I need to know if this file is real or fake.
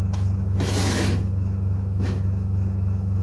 fake